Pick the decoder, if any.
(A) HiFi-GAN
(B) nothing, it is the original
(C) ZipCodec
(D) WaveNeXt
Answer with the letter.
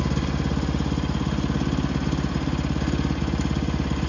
B